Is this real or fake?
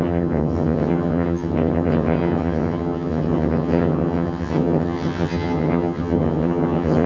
fake